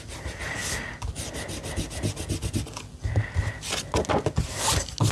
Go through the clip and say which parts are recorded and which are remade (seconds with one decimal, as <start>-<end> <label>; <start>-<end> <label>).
0.0-5.1 recorded